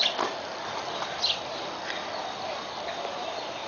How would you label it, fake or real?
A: real